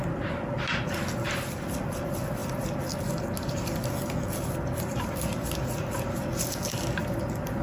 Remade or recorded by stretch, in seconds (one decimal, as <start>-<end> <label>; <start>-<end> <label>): 0.0-7.6 recorded